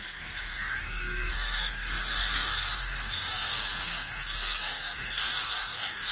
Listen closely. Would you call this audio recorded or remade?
remade